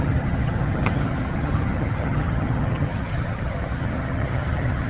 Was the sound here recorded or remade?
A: remade